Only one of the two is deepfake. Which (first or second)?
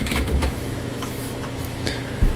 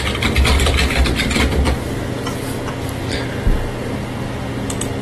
first